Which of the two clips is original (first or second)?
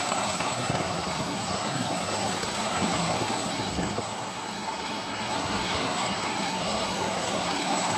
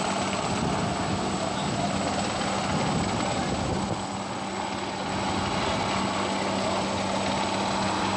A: second